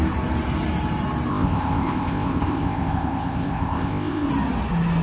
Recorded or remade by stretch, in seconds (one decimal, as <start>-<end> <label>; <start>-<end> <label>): 0.0-1.3 recorded; 1.3-4.3 remade; 4.3-5.0 recorded